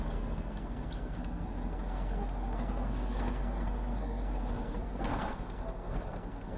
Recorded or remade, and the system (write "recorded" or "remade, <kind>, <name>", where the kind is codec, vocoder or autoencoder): remade, codec, SNAC